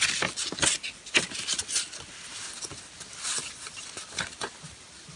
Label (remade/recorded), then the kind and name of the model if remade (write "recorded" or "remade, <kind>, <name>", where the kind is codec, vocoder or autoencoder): recorded